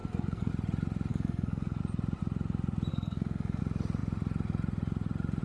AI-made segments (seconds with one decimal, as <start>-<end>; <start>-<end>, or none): 0.0-0.5; 1.1-1.8; 2.9-3.6